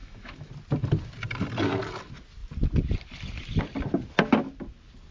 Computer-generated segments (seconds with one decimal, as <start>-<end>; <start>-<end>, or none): 0.0-0.5